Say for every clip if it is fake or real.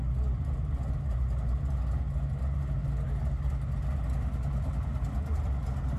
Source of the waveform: real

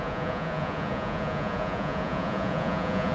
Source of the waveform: fake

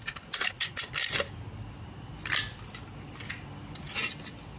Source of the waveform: real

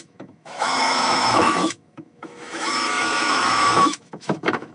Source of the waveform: fake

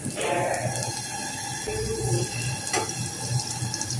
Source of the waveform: real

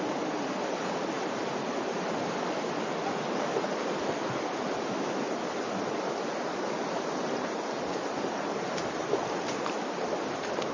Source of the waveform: real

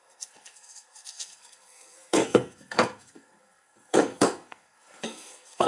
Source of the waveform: fake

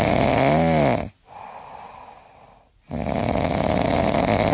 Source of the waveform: real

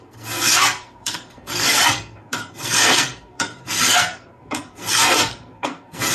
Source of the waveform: fake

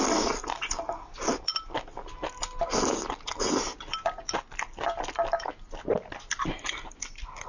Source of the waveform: real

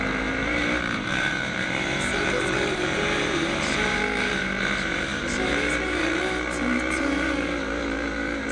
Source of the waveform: fake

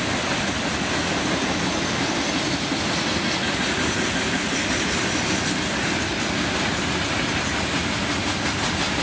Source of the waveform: real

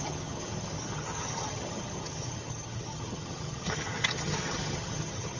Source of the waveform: fake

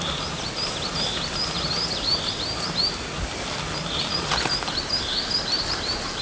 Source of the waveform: real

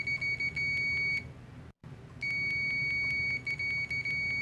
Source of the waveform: real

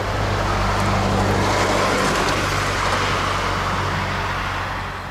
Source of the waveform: real